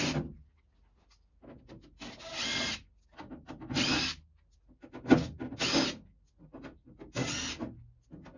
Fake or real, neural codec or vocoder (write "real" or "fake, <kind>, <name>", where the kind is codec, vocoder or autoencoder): real